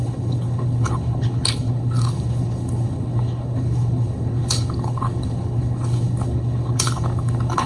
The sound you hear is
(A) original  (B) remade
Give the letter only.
B